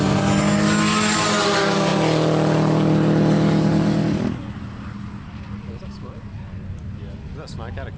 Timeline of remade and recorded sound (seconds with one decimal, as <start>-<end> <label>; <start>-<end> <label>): 0.0-8.0 recorded